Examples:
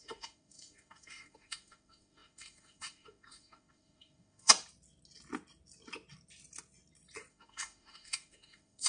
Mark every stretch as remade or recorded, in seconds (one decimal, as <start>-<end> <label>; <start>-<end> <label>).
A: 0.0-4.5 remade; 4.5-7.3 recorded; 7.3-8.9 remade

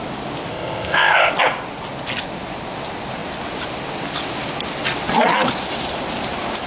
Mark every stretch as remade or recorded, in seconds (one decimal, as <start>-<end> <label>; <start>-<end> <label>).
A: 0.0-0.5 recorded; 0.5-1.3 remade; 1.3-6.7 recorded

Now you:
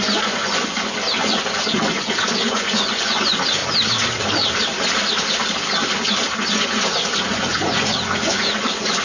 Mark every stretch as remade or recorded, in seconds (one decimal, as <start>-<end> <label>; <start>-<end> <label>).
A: 0.0-3.6 remade; 3.6-6.5 recorded; 6.5-9.0 remade

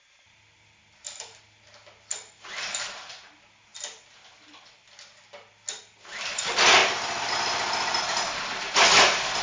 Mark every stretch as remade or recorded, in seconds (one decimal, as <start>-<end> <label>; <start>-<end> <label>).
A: 0.0-9.4 recorded